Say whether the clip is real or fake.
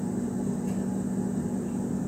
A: real